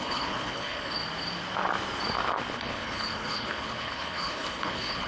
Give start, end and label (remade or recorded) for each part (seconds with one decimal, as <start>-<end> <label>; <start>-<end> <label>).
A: 0.0-1.0 remade; 1.0-2.5 recorded; 2.5-5.1 remade